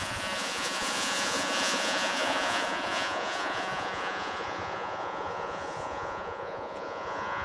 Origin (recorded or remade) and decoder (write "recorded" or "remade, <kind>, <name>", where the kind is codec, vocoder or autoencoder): remade, vocoder, Vocos